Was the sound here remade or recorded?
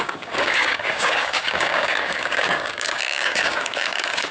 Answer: remade